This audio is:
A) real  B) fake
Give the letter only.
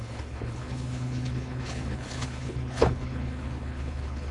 B